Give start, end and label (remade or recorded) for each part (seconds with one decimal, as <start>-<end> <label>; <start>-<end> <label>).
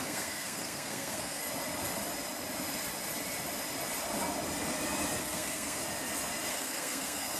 0.0-1.4 remade; 1.4-5.2 recorded; 5.2-5.8 remade; 5.8-6.5 recorded; 6.5-7.4 remade